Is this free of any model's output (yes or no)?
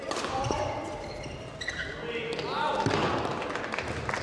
yes